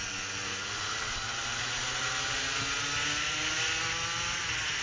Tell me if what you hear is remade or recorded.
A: recorded